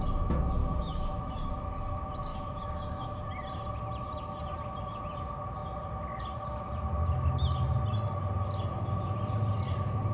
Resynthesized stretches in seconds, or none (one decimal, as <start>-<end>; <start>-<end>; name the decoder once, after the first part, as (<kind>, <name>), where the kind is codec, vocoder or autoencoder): 0.6-1.7 (autoencoder, DAC-VAE); 2.3-3.2